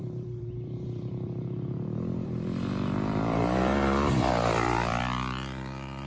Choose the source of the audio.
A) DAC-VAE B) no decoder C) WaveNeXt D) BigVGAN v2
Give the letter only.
D